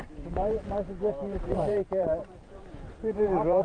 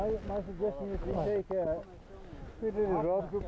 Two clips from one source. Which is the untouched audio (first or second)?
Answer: second